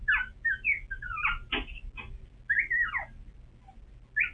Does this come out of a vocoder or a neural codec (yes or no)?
no